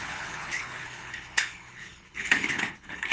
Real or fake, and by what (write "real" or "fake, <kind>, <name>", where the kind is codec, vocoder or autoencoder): fake, codec, HILCodec